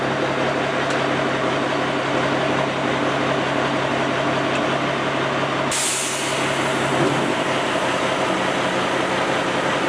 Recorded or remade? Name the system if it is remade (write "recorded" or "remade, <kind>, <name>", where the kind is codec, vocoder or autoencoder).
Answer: recorded